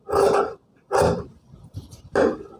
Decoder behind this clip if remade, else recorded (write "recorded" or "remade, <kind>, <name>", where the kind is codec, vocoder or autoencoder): remade, vocoder, BigVGAN v2